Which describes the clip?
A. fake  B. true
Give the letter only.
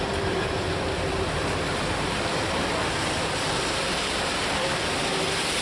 A